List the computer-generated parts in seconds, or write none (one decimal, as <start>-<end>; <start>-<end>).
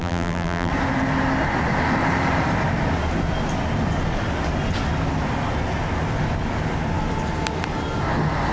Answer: 0.0-0.7